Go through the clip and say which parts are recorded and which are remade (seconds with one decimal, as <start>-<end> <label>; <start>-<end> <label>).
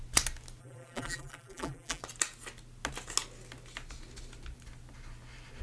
0.0-0.6 recorded; 0.6-2.0 remade; 2.0-5.6 recorded